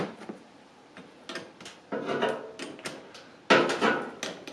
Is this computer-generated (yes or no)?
no